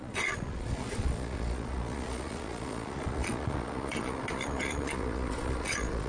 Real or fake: fake